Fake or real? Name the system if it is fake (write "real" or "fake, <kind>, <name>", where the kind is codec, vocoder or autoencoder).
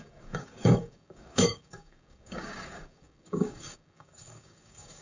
fake, codec, DAC